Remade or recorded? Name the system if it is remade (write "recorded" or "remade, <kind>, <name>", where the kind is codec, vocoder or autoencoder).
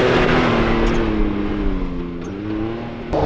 recorded